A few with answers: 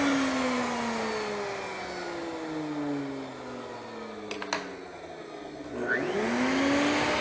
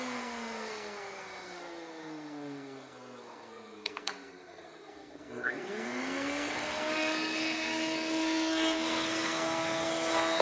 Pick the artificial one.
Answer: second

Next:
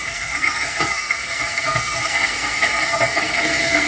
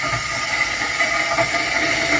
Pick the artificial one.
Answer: first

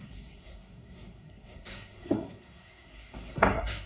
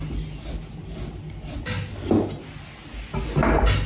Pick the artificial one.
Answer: first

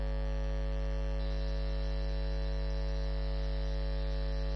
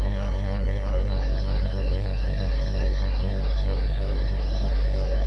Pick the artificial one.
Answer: second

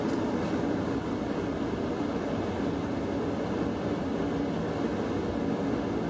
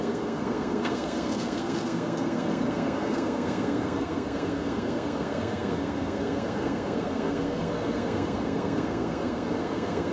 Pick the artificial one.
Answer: second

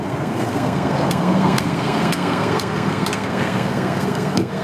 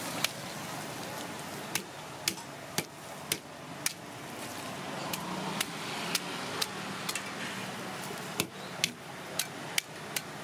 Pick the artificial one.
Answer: first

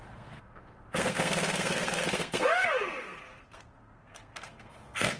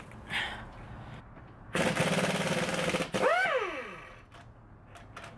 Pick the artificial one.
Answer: first